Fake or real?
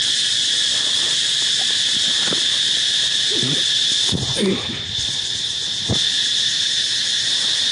real